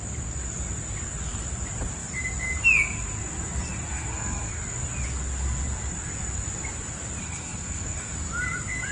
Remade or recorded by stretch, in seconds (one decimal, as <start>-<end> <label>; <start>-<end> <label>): 0.0-3.9 recorded; 3.9-4.6 remade; 4.6-7.2 recorded; 7.2-8.1 remade; 8.1-8.9 recorded